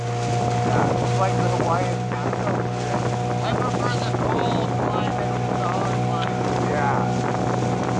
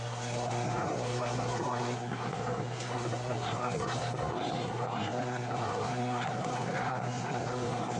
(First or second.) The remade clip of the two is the second